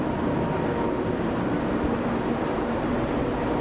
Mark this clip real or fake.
real